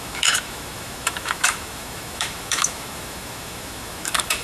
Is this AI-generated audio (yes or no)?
yes